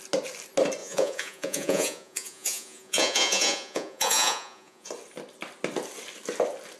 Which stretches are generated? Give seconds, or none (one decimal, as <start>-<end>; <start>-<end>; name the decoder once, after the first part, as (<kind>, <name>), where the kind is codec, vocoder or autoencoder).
0.8-4.9 (vocoder, Vocos)